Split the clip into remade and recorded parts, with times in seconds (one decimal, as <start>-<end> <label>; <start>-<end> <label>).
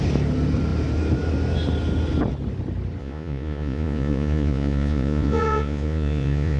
0.0-3.0 recorded; 3.0-6.6 remade